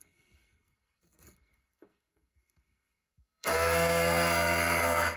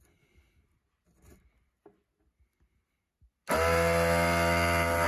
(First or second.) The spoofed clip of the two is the first